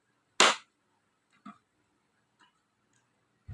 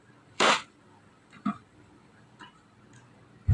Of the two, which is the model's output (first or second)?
second